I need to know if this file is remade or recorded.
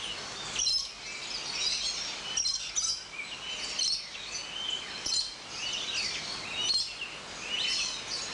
recorded